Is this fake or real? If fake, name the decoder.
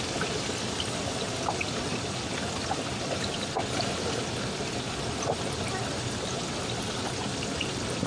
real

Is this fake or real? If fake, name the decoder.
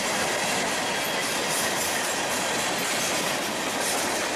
real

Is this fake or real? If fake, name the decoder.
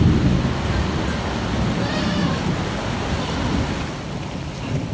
real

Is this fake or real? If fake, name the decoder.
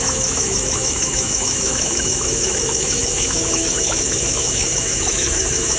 fake, autoencoder, DAC-VAE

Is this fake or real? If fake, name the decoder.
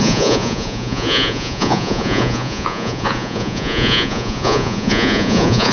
fake, vocoder, Vocos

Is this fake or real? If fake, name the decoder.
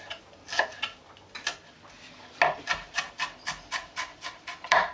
real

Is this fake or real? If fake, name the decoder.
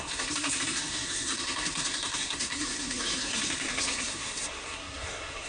fake, codec, SNAC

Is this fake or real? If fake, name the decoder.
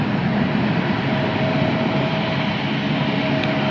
real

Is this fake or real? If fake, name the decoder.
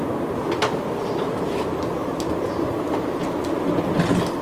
real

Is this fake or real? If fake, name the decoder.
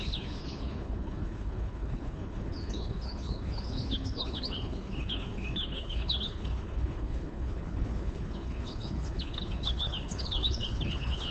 fake, codec, HILCodec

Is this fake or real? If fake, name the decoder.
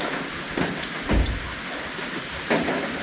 real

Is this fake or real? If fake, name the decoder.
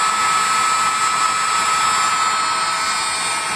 real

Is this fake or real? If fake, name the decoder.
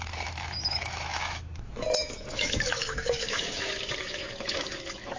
fake, autoencoder, DAC-VAE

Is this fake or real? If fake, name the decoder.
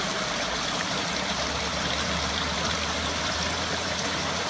fake, vocoder, BigVGAN v2